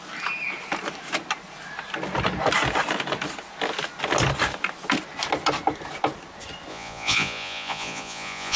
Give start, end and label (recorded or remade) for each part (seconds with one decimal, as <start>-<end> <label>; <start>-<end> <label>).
0.0-6.7 recorded; 6.7-8.6 remade

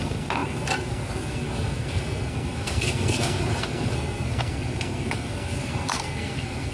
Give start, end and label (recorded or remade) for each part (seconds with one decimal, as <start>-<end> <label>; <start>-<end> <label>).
0.0-6.7 remade

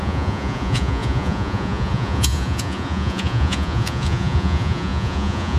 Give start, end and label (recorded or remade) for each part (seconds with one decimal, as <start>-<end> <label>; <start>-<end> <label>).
0.0-5.6 remade